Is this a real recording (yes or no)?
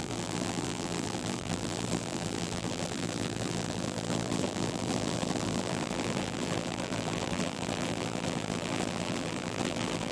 no